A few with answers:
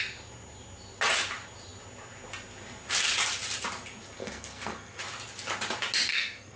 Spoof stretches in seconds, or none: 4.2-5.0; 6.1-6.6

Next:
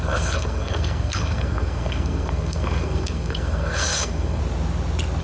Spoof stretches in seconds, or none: 0.0-4.4